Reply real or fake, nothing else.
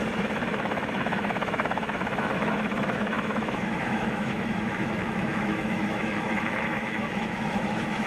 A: fake